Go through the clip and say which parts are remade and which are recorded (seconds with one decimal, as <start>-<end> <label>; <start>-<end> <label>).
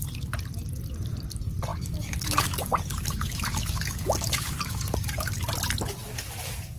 0.0-1.7 recorded; 1.7-5.5 remade; 5.5-6.0 recorded; 6.0-6.8 remade